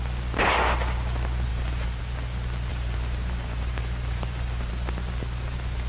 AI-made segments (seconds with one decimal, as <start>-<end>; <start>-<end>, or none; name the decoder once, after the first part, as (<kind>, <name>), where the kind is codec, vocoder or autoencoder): 1.5-2.0 (vocoder, BigVGAN v2); 2.7-4.7